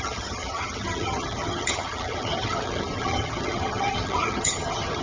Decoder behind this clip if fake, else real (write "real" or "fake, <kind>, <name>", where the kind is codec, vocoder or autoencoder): fake, vocoder, HiFi-GAN